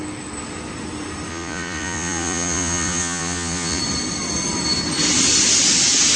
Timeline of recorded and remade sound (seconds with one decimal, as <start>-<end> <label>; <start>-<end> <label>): 0.0-1.3 recorded; 1.3-3.8 remade; 3.8-6.2 recorded